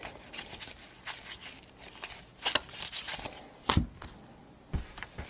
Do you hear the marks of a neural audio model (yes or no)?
no